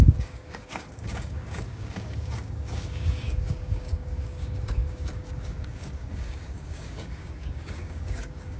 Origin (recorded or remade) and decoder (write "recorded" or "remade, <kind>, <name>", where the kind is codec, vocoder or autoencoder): remade, codec, DAC